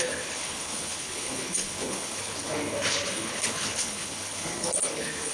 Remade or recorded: remade